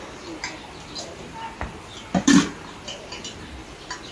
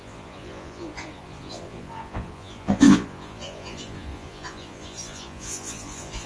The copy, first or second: second